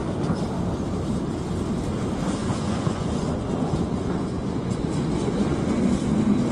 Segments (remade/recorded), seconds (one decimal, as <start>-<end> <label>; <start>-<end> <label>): 0.0-2.4 recorded; 2.4-5.8 remade; 5.8-6.5 recorded